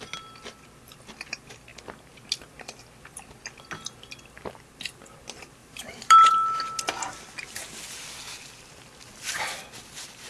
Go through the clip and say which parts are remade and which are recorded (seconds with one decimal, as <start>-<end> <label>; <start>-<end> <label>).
0.0-5.6 recorded; 5.6-6.3 remade; 6.3-10.3 recorded